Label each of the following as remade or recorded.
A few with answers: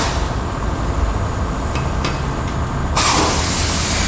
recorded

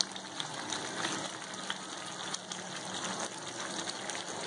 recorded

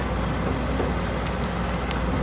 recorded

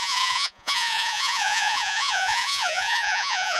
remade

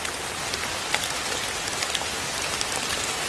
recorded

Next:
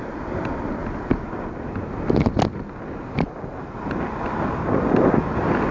recorded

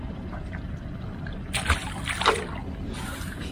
recorded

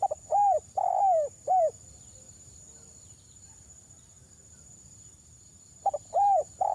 remade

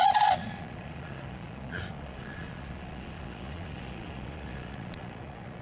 remade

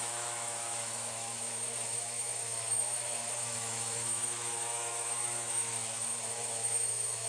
remade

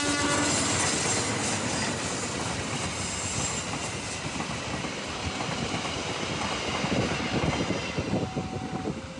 recorded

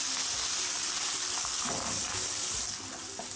recorded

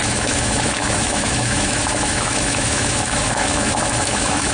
remade